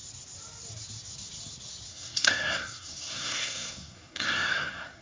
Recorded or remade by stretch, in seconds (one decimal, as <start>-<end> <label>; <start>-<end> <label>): 0.0-1.9 recorded; 1.9-5.0 remade